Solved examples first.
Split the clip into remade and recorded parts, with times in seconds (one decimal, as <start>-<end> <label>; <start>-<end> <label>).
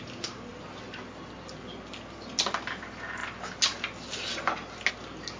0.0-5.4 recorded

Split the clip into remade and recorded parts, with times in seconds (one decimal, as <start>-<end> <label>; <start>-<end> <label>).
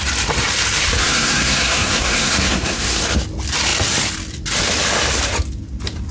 0.0-1.0 recorded; 1.0-3.0 remade; 3.0-6.1 recorded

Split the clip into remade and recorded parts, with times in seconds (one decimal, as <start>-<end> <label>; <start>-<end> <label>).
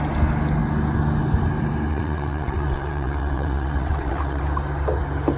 0.0-1.9 recorded; 1.9-4.4 remade; 4.4-5.4 recorded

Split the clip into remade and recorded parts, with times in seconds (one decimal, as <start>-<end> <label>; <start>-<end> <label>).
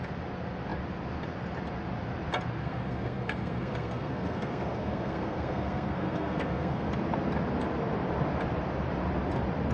0.0-2.6 recorded; 2.6-6.9 remade; 6.9-9.7 recorded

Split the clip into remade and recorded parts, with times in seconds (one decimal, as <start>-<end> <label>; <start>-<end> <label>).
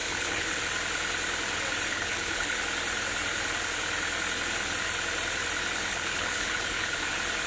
0.0-0.6 remade; 0.6-1.9 recorded; 1.9-2.6 remade; 2.6-5.9 recorded; 5.9-7.1 remade; 7.1-7.5 recorded